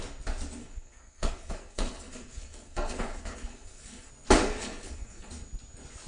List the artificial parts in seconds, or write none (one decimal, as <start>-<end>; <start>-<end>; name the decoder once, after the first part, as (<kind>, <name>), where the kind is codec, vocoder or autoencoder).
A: 0.6-4.1 (codec, SNAC); 4.6-5.3